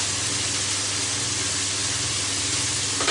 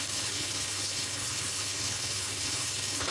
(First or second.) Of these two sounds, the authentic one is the first